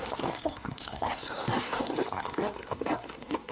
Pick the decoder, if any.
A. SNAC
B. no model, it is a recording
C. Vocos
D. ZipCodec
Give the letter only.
A